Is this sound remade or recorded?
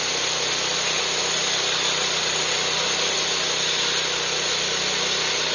recorded